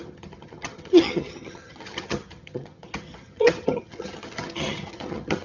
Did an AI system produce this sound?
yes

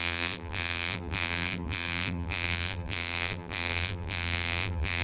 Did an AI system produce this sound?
yes